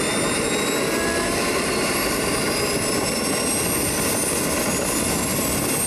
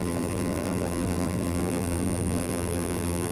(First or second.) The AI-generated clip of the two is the second